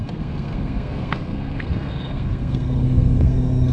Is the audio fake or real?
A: fake